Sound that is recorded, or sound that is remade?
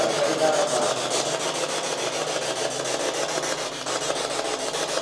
recorded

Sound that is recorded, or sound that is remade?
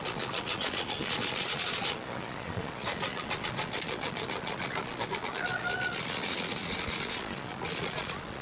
remade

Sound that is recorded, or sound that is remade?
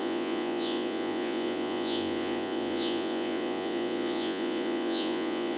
remade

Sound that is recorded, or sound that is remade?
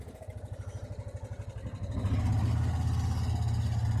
recorded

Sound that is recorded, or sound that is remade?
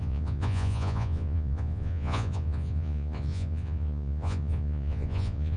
remade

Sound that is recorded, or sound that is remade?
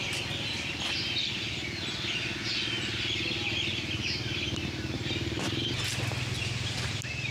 recorded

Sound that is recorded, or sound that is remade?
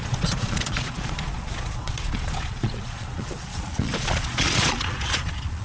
remade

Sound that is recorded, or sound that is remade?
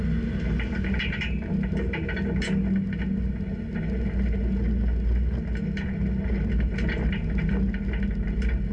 recorded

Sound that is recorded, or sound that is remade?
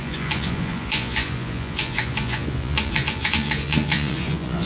remade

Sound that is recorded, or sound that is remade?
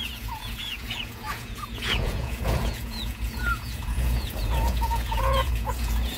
remade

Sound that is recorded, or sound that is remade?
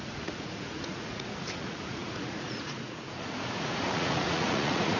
remade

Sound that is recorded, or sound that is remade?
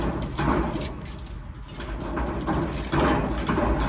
recorded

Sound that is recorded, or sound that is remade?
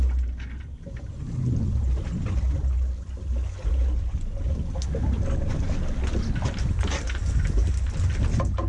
recorded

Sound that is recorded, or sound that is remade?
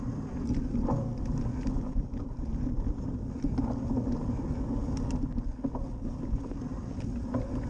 recorded